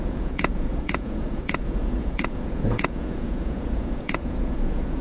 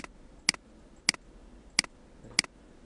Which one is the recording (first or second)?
second